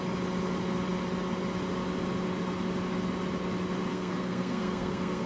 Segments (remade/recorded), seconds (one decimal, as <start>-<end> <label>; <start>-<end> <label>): 0.0-3.9 recorded; 3.9-5.3 remade